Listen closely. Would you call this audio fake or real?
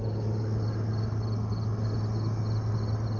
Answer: real